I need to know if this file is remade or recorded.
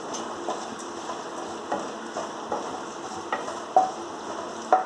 recorded